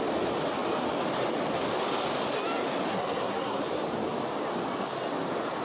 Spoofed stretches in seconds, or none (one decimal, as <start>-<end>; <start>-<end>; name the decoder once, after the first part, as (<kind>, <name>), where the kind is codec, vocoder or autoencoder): 2.9-3.6 (codec, SNAC)